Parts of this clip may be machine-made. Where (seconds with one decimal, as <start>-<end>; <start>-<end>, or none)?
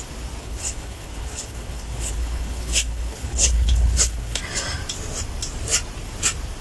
0.4-4.4